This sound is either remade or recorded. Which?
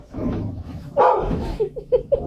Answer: remade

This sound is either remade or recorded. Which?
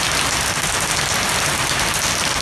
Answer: recorded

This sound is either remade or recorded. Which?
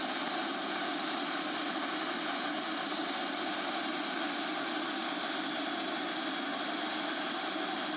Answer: recorded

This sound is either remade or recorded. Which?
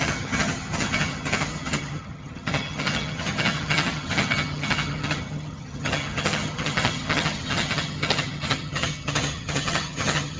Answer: remade